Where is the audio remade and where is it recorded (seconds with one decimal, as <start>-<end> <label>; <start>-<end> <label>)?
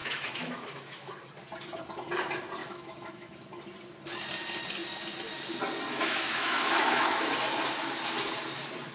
0.0-1.1 remade; 1.1-2.6 recorded; 2.6-3.6 remade; 3.6-5.9 recorded; 5.9-7.4 remade; 7.4-8.9 recorded